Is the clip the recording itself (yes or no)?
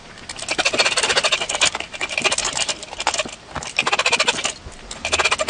yes